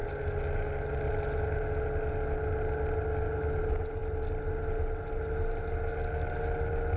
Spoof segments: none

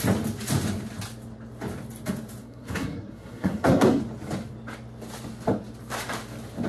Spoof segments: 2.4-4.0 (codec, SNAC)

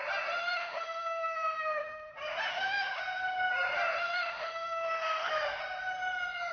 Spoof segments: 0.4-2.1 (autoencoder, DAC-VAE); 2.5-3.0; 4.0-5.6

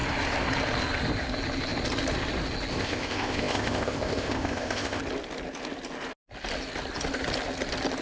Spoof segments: 2.7-5.0 (codec, ZipCodec)